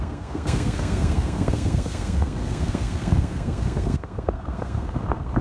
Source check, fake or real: fake